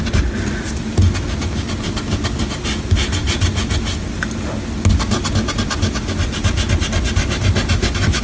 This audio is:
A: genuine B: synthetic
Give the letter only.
A